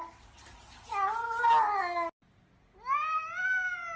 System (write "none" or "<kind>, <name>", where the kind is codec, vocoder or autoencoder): none